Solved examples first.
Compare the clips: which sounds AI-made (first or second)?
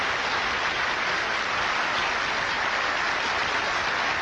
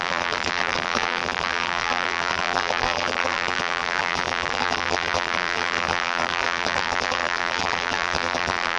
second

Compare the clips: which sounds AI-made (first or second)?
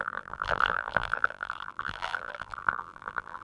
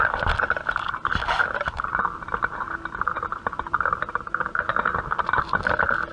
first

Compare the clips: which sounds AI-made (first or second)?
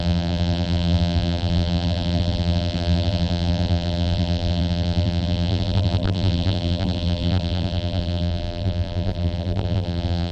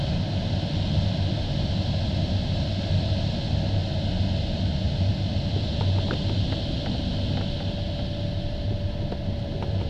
first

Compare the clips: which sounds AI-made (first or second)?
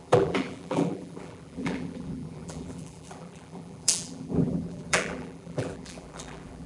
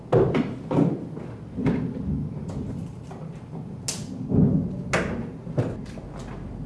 first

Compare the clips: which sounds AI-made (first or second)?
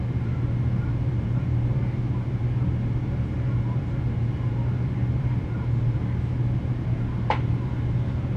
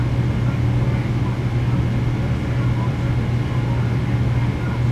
first